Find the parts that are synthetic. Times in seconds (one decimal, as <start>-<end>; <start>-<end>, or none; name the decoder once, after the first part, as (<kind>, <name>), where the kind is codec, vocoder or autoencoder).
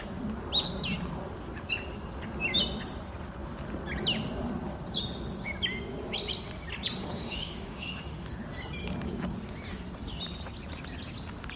7.0-8.3 (autoencoder, DAC-VAE)